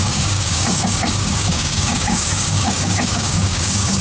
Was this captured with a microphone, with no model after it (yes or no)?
no